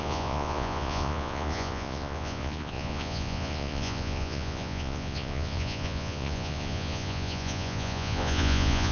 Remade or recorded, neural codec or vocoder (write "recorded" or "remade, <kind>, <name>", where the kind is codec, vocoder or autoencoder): remade, vocoder, Vocos